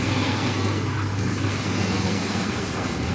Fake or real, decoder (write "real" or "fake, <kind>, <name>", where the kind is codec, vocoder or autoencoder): fake, codec, SNAC